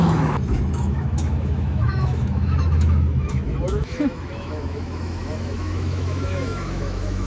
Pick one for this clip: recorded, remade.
remade